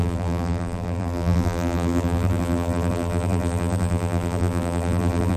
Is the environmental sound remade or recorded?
remade